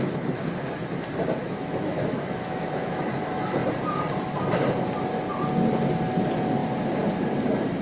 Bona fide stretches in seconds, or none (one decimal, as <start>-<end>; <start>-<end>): 0.0-1.4; 3.1-7.8